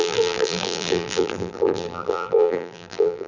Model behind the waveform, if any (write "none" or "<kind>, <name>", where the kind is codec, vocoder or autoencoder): vocoder, BigVGAN v2